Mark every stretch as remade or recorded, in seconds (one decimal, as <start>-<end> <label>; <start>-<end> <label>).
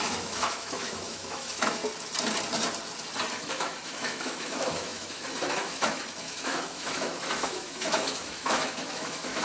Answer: 0.0-1.8 remade; 1.8-3.3 recorded; 3.3-9.4 remade